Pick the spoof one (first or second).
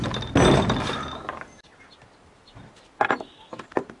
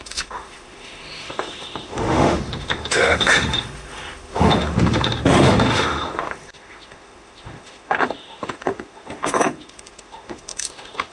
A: second